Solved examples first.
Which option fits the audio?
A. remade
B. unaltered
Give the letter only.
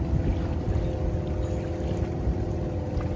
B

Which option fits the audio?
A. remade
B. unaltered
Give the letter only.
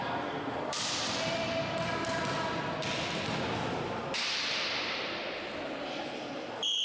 B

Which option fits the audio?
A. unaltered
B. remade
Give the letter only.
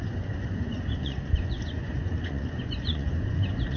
B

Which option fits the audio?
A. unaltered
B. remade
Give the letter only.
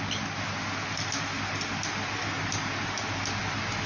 A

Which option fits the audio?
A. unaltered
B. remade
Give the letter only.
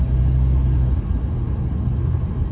A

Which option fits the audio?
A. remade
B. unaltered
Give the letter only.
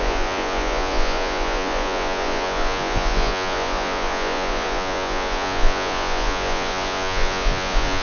A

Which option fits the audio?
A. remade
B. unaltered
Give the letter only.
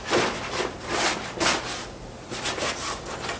B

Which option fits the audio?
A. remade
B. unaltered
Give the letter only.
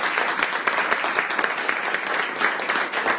B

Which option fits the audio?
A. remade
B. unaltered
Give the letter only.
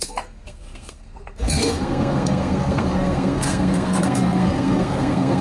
A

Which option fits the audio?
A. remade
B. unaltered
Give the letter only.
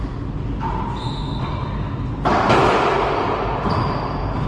B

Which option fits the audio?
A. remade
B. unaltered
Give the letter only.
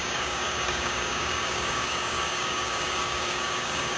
A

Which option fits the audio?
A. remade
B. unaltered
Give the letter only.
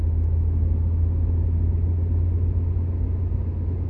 B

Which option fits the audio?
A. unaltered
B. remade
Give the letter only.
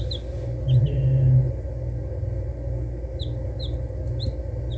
A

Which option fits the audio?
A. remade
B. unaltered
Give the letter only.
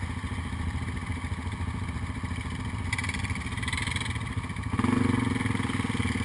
B